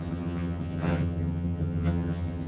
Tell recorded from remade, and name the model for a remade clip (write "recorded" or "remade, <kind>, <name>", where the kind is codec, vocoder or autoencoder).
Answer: remade, vocoder, HiFi-GAN